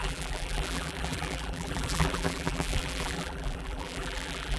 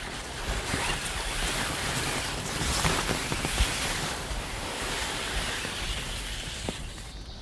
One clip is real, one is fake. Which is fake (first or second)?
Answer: first